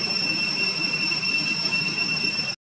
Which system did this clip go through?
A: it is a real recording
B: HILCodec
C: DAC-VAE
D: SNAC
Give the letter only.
A